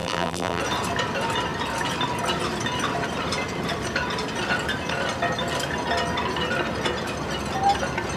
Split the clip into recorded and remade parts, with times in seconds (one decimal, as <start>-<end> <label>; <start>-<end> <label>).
0.0-0.6 remade; 0.6-8.2 recorded